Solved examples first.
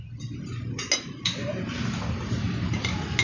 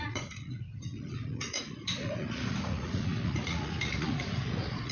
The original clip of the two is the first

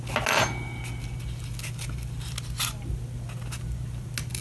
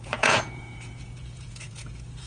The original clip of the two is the first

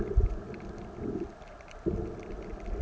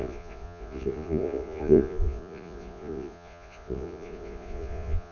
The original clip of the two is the first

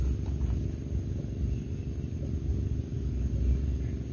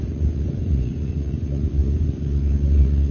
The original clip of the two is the first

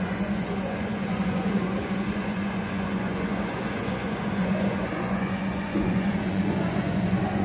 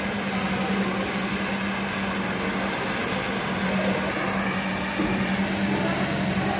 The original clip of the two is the second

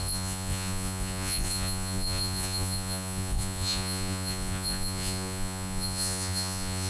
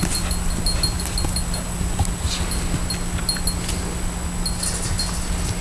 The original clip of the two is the second